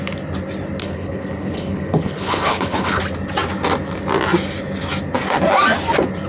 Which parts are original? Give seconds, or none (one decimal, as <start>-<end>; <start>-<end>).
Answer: 0.0-0.8; 3.0-6.3